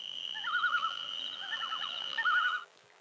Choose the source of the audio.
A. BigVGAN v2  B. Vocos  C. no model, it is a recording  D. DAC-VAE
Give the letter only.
A